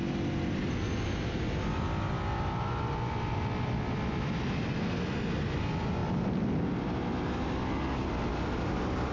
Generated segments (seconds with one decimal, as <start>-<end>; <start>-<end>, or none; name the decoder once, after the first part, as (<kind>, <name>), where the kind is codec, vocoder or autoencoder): none